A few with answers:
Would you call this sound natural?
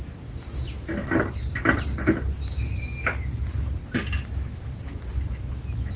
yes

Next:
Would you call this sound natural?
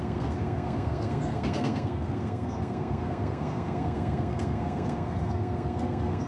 no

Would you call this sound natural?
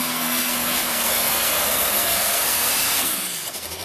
no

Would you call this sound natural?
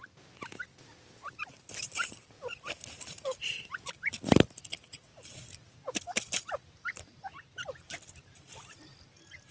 no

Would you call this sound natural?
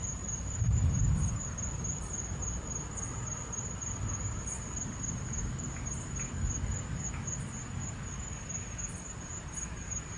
yes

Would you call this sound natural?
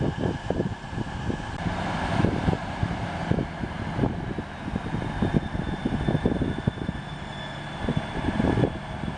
yes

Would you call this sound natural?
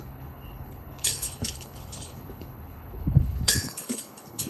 no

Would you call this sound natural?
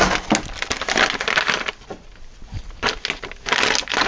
yes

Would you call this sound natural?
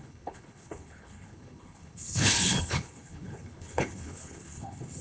no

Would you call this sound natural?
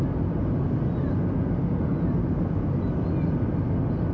yes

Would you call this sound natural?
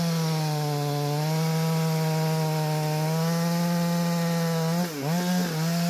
yes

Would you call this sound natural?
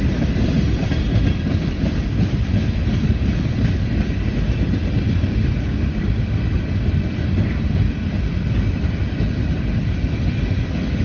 yes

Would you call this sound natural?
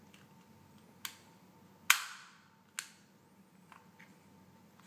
yes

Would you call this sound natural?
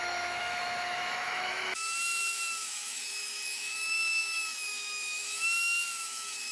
no